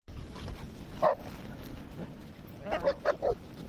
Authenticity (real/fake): real